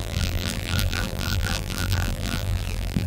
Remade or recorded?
remade